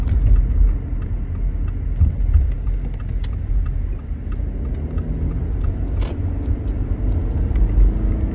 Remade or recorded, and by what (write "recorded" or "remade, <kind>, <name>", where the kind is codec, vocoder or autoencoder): recorded